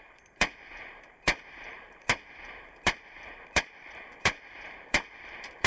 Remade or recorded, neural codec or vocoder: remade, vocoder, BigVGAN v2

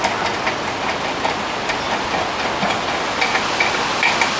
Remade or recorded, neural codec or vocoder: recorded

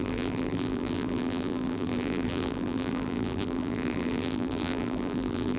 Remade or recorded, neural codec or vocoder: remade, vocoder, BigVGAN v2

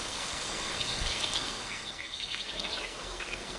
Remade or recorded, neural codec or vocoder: remade, codec, SNAC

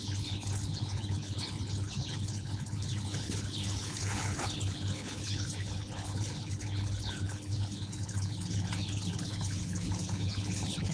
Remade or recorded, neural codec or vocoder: remade, codec, HILCodec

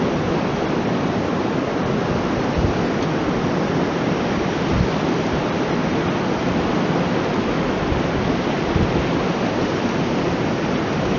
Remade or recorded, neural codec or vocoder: recorded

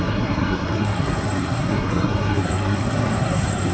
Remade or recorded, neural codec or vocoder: remade, codec, SNAC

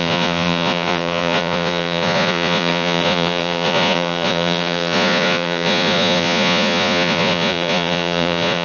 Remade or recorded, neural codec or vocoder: remade, vocoder, Vocos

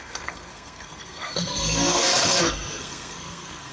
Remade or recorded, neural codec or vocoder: remade, codec, SNAC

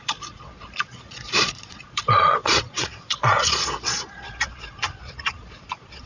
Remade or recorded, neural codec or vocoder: remade, vocoder, Vocos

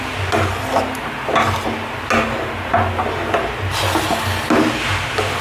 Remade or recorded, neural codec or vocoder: recorded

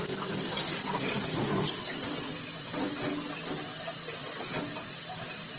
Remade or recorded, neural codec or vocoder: remade, vocoder, BigVGAN v2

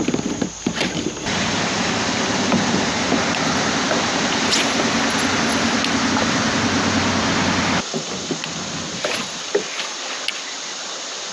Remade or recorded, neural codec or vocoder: recorded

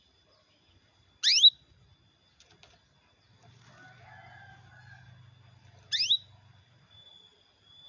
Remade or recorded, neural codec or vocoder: recorded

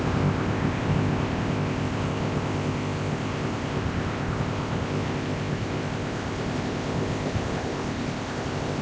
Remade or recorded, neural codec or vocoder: remade, codec, ZipCodec